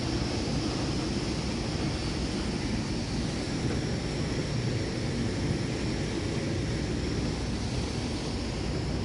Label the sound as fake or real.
real